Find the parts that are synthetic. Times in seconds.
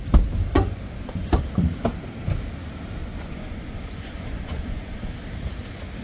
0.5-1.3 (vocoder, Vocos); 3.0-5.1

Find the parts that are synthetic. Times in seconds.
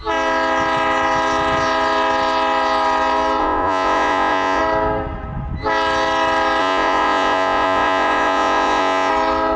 3.4-4.6 (vocoder, Vocos); 6.6-9.1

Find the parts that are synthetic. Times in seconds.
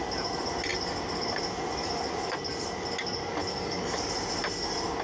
3.5-4.1 (codec, DAC)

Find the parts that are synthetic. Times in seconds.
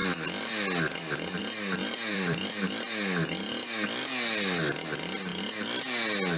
1.8-2.6 (vocoder, BigVGAN v2)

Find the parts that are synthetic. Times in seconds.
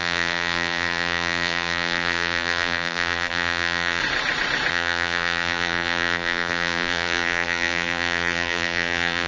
0.0-4.0 (vocoder, BigVGAN v2); 4.7-9.3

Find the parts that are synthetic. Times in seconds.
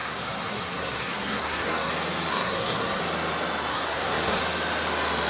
0.0-1.9 (codec, SNAC); 2.3-3.0; 3.7-4.4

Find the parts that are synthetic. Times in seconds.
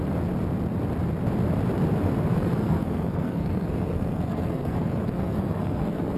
2.3-6.2 (codec, SNAC)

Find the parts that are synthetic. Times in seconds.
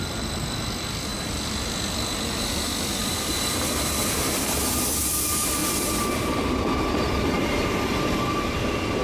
0.0-1.1 (vocoder, BigVGAN v2); 2.4-5.6; 6.5-9.0